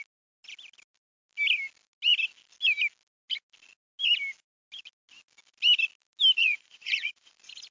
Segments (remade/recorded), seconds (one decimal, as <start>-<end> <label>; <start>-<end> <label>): 0.0-6.4 recorded; 6.4-7.3 remade; 7.3-7.7 recorded